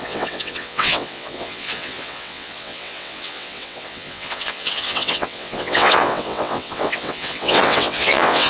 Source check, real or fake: fake